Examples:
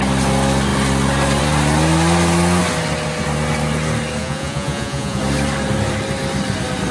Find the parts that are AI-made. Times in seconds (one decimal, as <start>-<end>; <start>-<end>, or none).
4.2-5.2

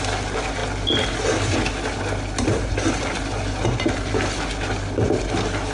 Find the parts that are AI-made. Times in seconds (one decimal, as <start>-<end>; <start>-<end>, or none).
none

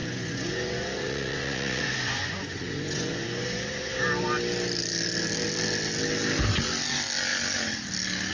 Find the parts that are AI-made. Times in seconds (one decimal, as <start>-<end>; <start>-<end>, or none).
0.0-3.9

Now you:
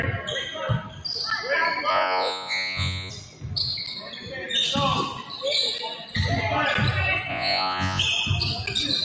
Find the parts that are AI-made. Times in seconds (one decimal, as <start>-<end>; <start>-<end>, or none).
1.9-3.1; 7.3-8.0

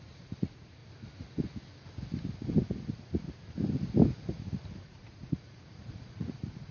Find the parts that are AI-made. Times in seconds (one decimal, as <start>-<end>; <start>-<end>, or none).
0.0-0.8; 4.8-6.7

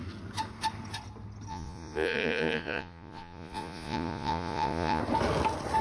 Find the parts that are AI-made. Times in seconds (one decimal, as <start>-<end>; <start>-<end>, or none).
1.5-5.0

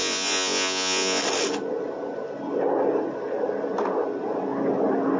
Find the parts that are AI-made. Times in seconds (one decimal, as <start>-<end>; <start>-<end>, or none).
0.0-1.2

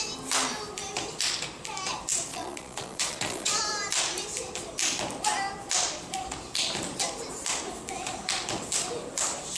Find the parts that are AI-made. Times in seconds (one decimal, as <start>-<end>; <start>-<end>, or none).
2.3-3.6